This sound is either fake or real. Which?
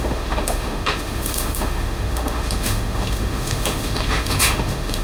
fake